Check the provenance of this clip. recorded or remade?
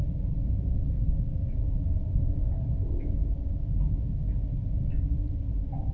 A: recorded